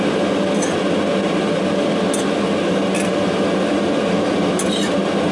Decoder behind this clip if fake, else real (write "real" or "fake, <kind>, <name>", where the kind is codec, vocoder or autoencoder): real